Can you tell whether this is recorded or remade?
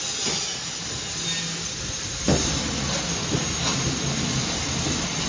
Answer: recorded